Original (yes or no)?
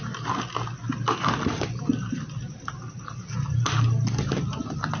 yes